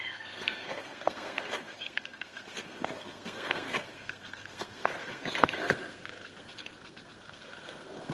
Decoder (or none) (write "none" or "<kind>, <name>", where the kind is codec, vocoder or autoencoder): codec, SNAC